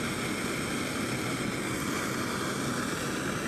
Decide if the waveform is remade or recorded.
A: recorded